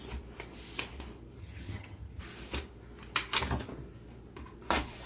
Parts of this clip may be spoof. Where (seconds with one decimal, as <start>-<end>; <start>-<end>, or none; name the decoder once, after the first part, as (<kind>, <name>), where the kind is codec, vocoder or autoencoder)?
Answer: 1.4-2.2 (vocoder, HiFi-GAN)